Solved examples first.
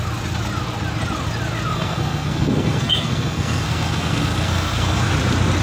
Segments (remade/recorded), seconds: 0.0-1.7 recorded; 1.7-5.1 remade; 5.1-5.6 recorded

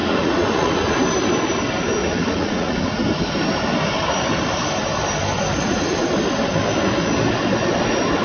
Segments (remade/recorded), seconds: 0.0-0.9 remade; 0.9-2.0 recorded; 2.0-3.0 remade; 3.0-5.6 recorded; 5.6-6.1 remade; 6.1-8.2 recorded

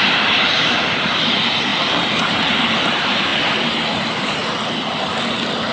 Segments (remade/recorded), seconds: 0.0-1.7 remade; 1.7-2.2 recorded; 2.2-3.3 remade; 3.3-3.9 recorded; 3.9-4.4 remade; 4.4-5.7 recorded

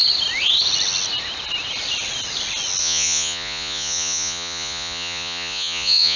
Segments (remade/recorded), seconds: 0.0-2.8 recorded; 2.8-6.2 remade

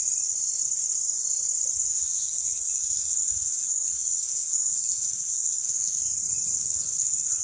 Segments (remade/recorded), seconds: 0.0-1.9 recorded; 1.9-6.0 remade; 6.0-6.6 recorded; 6.6-7.4 remade

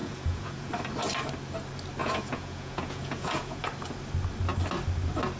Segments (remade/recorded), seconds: 0.0-0.7 remade; 0.7-2.0 recorded; 2.0-3.6 remade; 3.6-5.4 recorded